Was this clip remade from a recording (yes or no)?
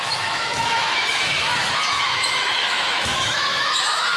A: yes